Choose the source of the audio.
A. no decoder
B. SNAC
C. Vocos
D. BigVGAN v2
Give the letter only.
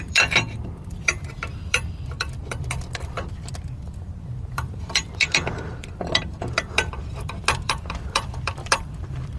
D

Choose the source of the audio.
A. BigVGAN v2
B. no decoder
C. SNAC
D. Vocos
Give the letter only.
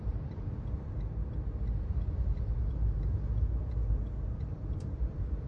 A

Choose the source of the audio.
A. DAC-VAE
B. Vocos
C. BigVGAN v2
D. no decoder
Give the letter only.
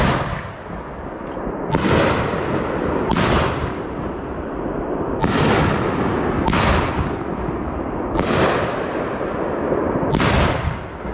D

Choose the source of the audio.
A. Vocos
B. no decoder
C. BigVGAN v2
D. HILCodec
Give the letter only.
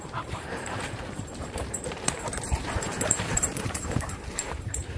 C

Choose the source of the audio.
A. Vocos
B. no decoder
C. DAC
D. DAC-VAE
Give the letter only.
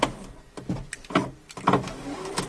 B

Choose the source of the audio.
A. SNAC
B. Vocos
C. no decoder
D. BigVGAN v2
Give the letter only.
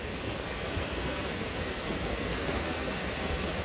A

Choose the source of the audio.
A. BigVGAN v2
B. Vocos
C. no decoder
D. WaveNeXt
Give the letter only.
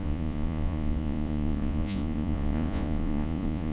B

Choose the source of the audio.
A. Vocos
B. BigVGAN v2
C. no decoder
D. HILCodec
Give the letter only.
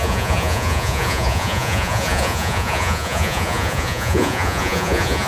A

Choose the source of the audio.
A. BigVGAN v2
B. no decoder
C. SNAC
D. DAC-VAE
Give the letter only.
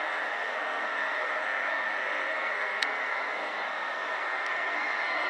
C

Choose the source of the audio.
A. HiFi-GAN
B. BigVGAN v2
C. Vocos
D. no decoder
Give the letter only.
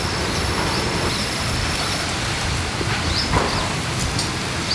D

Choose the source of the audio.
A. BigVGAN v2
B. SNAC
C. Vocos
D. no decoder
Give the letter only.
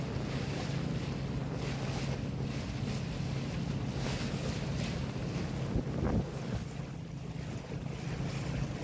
D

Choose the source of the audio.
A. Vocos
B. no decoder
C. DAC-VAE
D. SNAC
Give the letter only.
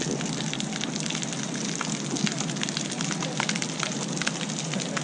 B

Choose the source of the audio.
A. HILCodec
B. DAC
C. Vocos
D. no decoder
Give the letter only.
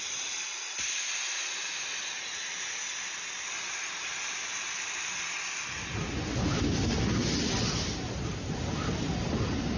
D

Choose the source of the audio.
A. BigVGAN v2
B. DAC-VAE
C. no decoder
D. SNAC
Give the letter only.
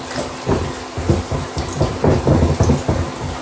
C